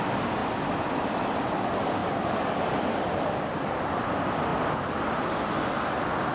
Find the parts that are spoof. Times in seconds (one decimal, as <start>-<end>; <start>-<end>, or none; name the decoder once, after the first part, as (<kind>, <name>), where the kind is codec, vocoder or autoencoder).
0.0-0.4 (vocoder, BigVGAN v2); 0.9-4.5; 5.2-6.3